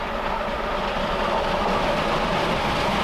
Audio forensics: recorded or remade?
remade